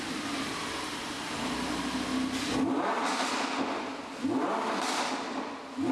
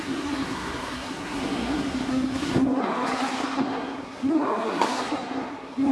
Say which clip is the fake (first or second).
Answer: second